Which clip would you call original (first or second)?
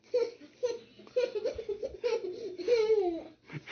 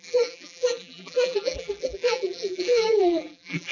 first